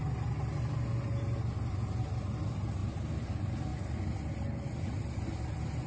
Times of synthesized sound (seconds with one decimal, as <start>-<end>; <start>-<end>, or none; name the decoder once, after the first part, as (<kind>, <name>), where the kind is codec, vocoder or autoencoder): none